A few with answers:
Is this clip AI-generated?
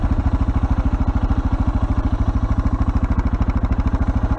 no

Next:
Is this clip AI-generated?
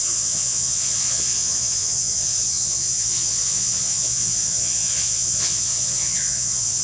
yes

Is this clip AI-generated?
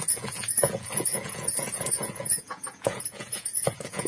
yes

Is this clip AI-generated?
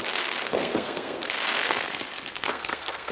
yes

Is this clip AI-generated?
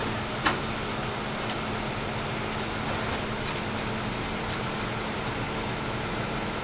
no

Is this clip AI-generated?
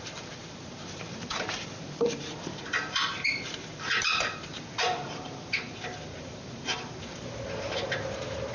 yes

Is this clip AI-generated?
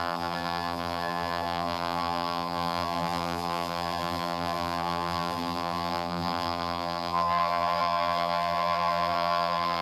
yes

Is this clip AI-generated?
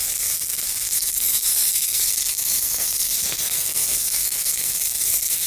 yes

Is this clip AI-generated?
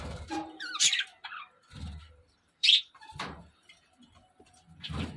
yes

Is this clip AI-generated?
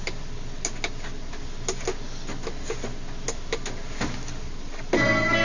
no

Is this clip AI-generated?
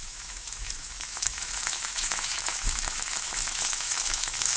yes